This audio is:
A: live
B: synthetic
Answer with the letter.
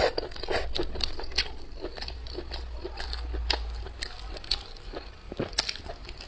A